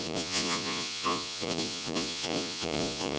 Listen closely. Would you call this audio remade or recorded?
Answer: remade